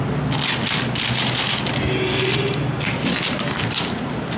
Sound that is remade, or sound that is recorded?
recorded